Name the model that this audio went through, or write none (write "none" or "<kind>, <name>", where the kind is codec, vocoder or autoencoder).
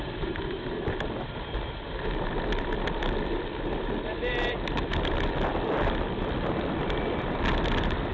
vocoder, BigVGAN v2